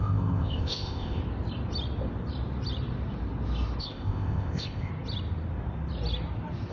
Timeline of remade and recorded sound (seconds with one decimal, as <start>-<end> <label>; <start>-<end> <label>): 0.0-1.2 remade; 1.2-3.8 recorded; 3.8-4.9 remade; 4.9-6.7 recorded